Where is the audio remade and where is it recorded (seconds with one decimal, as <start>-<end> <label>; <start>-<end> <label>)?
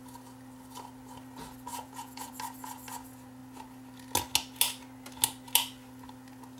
0.0-1.7 recorded; 1.7-2.3 remade; 2.3-6.6 recorded